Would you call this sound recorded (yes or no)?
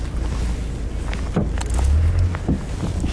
yes